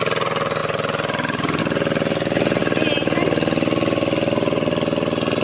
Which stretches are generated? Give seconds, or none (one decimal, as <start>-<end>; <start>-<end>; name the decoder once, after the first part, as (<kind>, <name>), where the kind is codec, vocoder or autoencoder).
none